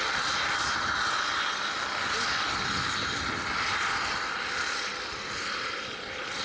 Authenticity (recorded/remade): recorded